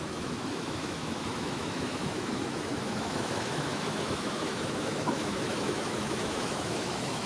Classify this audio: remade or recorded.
remade